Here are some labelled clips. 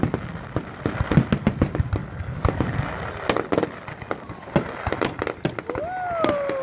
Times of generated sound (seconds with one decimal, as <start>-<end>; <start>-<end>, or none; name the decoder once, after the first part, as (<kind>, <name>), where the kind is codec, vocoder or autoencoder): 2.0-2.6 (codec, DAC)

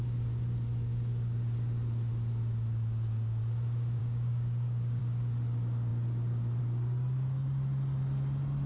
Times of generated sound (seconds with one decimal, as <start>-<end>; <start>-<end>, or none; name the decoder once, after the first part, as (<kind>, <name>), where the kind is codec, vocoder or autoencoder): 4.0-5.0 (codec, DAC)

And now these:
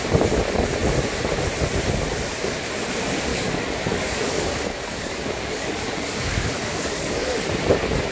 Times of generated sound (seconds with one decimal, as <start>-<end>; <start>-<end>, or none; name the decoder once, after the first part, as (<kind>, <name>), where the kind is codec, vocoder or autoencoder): 3.3-7.4 (codec, DAC)

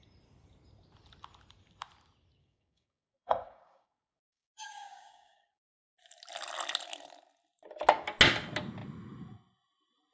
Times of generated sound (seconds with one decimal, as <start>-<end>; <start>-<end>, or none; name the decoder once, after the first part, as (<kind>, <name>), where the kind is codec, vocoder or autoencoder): 2.4-6.0 (codec, DAC)

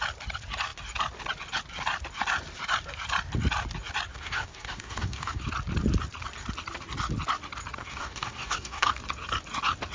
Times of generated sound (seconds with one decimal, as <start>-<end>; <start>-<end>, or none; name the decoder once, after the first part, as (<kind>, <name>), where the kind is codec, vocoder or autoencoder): 4.1-5.4 (codec, DAC); 7.8-8.9

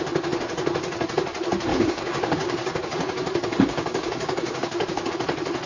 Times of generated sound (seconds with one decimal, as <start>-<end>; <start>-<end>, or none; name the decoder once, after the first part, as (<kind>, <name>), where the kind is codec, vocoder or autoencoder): 1.7-5.1 (codec, DAC)

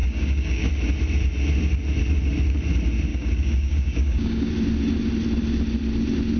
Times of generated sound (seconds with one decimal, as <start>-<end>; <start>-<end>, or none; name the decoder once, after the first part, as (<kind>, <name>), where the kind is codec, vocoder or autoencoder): 0.0-0.7 (codec, DAC); 3.1-4.5

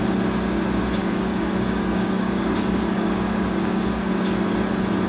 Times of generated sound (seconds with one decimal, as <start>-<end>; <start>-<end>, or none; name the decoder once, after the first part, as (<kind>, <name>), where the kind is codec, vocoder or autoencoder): 1.0-4.1 (codec, DAC)